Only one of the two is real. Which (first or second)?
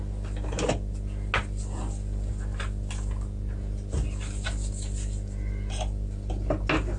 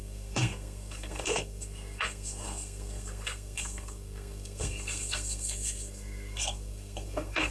first